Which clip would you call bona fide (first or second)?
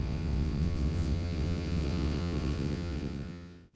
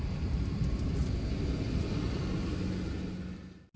second